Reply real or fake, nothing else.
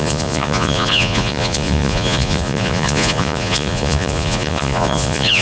fake